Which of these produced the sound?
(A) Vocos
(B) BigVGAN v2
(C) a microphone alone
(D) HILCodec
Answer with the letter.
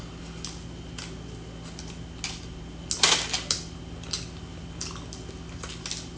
C